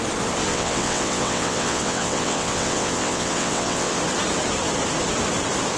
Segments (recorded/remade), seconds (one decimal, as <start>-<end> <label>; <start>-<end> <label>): 0.0-0.5 recorded; 0.5-4.0 remade; 4.0-5.8 recorded